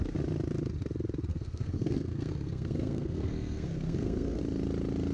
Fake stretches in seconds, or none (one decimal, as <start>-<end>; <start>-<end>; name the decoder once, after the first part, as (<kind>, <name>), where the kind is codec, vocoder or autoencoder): 1.3-4.4 (codec, SNAC)